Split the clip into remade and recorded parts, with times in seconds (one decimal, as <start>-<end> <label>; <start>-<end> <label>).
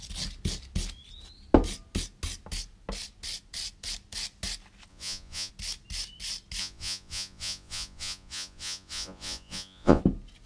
0.0-4.9 recorded; 4.9-5.5 remade; 5.5-6.6 recorded; 6.6-10.0 remade; 10.0-10.5 recorded